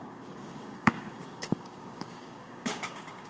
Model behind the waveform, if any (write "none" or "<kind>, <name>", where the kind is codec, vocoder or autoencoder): codec, DAC